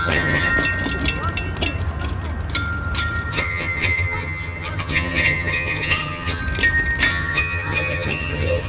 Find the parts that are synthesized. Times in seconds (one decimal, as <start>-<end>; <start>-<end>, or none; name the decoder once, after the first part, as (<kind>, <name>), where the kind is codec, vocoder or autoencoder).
0.0-0.5 (vocoder, HiFi-GAN); 3.3-6.4; 7.1-8.7